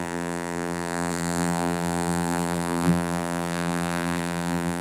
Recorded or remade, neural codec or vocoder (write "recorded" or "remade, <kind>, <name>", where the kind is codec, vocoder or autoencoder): remade, vocoder, BigVGAN v2